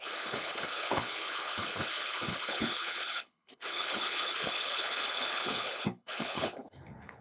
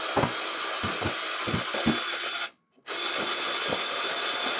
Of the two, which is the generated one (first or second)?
first